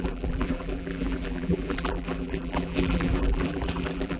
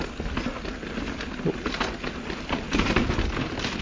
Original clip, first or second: second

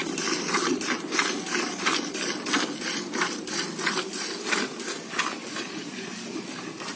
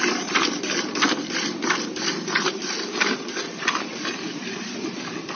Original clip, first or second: first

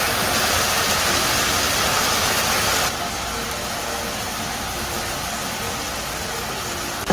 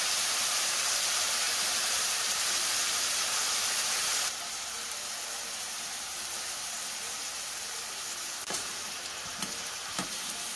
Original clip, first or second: first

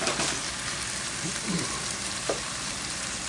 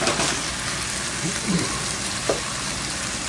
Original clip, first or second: second